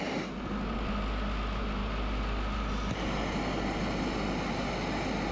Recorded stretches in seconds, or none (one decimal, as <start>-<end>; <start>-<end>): 0.0-5.3